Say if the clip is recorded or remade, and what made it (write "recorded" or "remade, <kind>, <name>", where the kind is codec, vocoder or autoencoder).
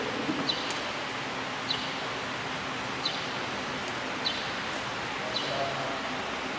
recorded